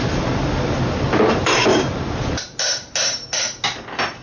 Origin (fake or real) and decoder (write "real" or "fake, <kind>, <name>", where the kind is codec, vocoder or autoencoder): real